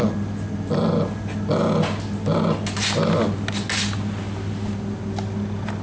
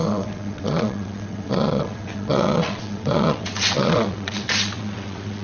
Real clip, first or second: first